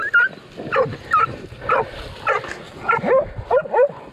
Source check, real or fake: real